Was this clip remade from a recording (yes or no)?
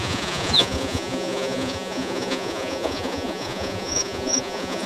yes